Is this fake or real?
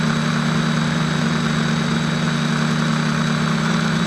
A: real